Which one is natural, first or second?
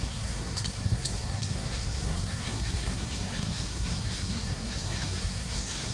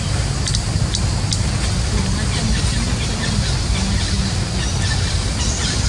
second